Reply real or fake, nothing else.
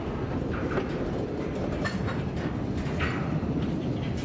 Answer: real